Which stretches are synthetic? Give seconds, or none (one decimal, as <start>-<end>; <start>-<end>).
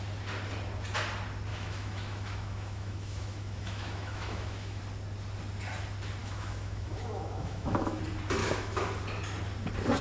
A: 1.5-4.8; 6.2-8.0; 8.4-8.9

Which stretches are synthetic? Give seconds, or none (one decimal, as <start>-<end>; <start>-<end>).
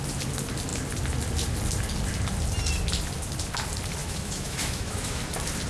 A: 4.0-5.2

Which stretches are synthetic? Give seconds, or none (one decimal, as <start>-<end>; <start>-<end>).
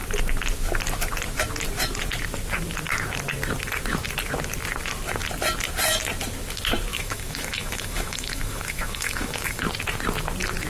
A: 6.9-9.6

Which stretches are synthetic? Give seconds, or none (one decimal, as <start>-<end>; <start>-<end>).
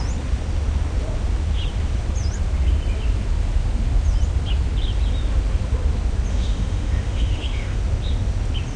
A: 6.3-7.8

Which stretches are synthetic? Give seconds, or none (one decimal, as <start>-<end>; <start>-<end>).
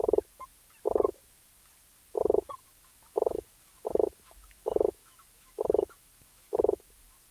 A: 2.6-6.6